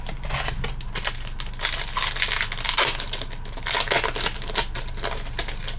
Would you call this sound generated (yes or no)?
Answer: no